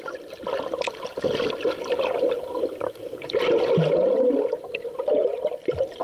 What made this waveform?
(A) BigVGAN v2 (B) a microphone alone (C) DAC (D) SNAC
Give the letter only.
B